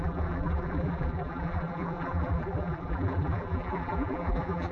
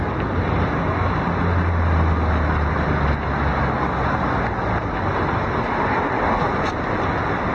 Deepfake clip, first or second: first